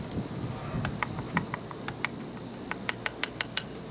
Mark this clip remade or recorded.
recorded